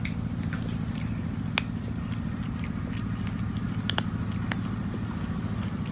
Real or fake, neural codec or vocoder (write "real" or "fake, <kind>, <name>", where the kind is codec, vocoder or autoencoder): real